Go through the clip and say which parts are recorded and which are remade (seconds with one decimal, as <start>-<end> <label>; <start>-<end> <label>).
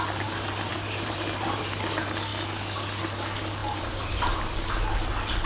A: 0.0-0.7 recorded; 0.7-1.6 remade; 1.6-3.6 recorded; 3.6-4.7 remade; 4.7-5.5 recorded